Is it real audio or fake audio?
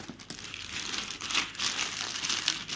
real